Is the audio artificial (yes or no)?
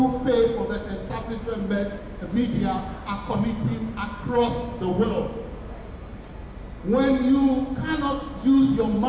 no